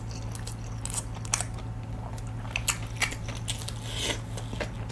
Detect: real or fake real